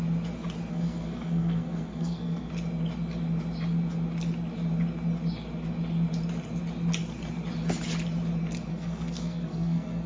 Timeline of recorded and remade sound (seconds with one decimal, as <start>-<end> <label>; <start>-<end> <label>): 0.0-0.7 recorded; 0.7-2.5 remade; 2.5-8.7 recorded; 8.7-10.1 remade